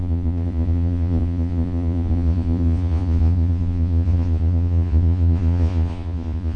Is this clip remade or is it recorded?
remade